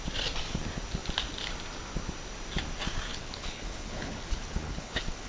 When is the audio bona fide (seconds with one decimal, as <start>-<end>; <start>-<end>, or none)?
0.0-3.1